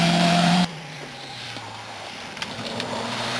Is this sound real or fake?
fake